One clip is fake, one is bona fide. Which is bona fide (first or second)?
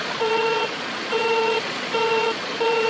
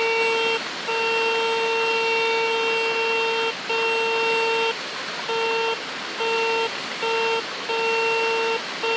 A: second